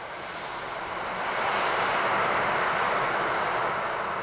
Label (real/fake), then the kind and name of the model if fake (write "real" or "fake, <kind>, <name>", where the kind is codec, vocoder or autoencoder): real